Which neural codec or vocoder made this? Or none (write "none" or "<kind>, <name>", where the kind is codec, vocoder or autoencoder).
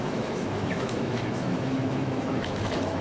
autoencoder, DAC-VAE